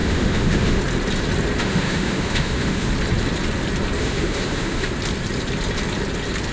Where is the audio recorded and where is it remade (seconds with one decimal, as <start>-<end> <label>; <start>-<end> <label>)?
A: 0.0-0.8 remade; 0.8-1.6 recorded; 1.6-2.9 remade; 2.9-4.0 recorded; 4.0-4.9 remade; 4.9-6.5 recorded